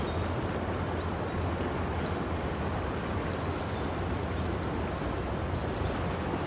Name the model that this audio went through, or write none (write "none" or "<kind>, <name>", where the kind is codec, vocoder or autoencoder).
none